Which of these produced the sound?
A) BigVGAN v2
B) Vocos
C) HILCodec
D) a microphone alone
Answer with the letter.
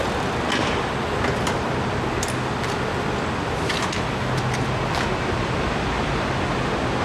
D